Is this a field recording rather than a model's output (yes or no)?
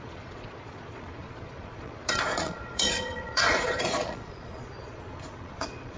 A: no